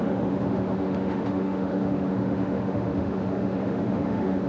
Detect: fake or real fake